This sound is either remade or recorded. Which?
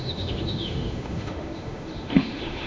remade